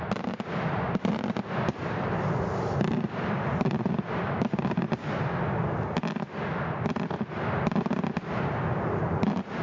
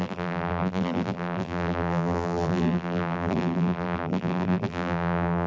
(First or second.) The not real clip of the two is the second